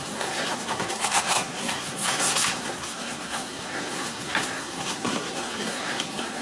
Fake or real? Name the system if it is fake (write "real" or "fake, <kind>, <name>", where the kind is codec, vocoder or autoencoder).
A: fake, codec, SNAC